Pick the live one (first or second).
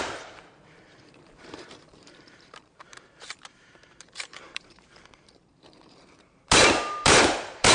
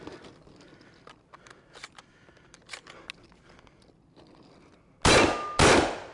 second